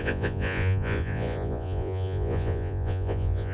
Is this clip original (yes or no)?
no